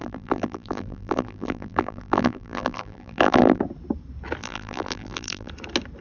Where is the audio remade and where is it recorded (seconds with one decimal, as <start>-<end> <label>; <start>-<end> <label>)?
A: 0.0-3.6 remade; 3.6-4.4 recorded; 4.4-5.5 remade; 5.5-6.0 recorded